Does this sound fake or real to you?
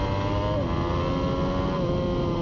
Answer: real